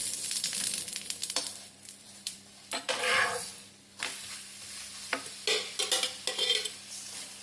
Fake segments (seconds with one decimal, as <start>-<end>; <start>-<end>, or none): 0.0-3.0